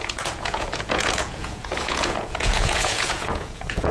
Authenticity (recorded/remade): remade